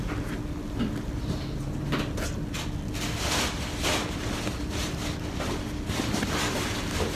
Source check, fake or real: real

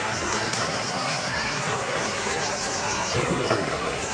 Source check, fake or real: fake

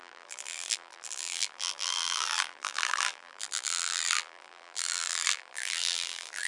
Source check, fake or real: fake